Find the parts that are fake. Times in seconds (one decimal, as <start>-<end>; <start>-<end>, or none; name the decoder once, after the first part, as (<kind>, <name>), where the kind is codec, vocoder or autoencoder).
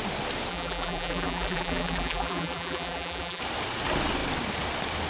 0.5-3.4 (vocoder, BigVGAN v2)